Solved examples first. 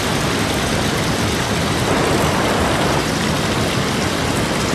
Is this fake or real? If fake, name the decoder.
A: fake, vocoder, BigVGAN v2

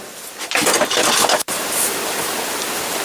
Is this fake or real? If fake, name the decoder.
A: fake, vocoder, BigVGAN v2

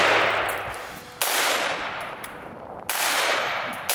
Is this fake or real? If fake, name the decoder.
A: real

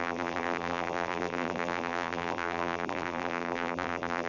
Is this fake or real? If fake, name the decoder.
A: fake, vocoder, BigVGAN v2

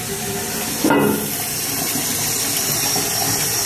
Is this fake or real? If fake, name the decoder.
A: real